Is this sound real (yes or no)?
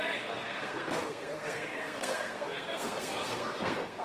no